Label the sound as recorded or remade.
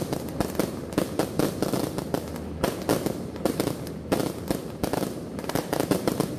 recorded